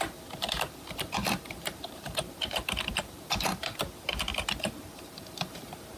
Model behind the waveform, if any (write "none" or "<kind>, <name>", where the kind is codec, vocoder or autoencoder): vocoder, BigVGAN v2